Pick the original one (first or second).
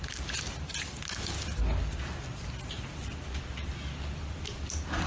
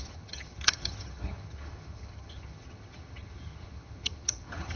first